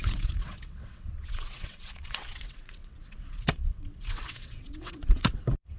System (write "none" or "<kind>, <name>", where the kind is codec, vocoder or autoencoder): vocoder, WaveNeXt